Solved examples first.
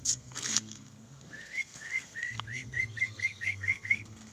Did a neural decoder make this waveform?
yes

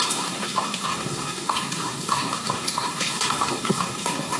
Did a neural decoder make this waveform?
yes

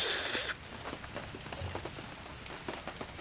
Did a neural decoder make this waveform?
no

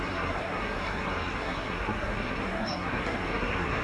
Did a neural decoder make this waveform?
yes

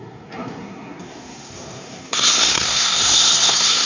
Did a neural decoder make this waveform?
yes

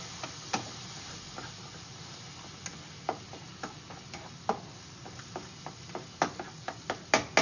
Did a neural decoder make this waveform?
no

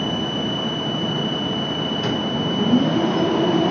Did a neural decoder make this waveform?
no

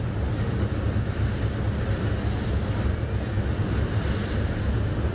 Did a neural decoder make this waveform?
no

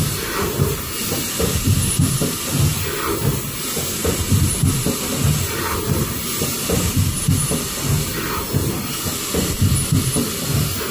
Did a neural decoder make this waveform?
no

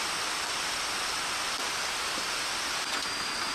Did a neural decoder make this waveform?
no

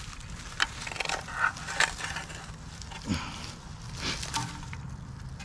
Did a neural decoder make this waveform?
no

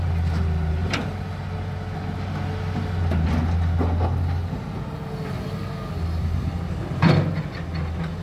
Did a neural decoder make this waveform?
no